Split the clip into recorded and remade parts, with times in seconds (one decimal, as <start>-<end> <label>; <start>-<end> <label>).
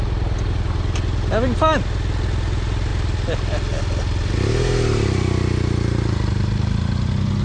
0.0-7.4 recorded